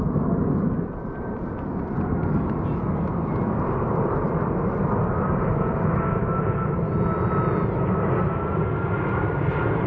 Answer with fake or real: real